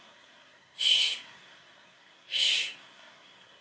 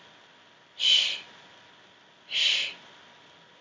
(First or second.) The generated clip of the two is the first